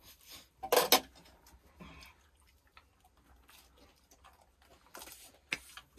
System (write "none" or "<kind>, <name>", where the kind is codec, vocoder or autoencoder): none